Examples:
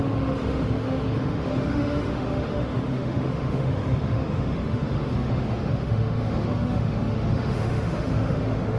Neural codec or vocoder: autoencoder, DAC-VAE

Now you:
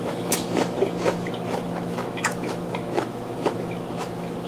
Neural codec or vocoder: autoencoder, DAC-VAE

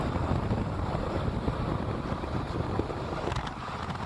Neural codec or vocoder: none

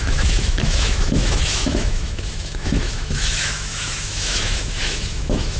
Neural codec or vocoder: autoencoder, DAC-VAE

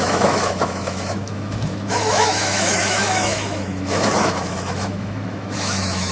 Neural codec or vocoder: autoencoder, DAC-VAE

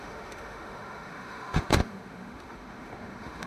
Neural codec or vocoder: autoencoder, DAC-VAE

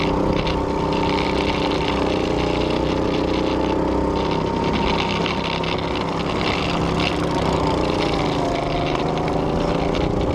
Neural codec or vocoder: none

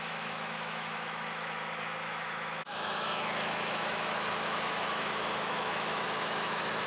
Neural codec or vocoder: autoencoder, DAC-VAE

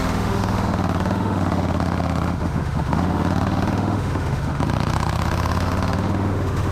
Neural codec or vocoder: autoencoder, DAC-VAE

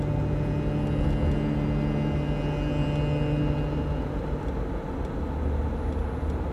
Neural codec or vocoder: none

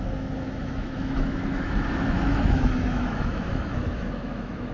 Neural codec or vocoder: autoencoder, DAC-VAE